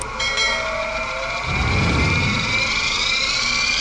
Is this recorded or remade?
remade